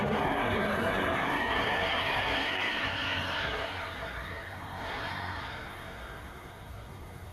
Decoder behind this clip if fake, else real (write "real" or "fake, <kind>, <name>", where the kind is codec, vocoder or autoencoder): fake, codec, SNAC